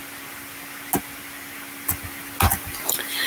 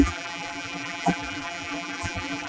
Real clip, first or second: first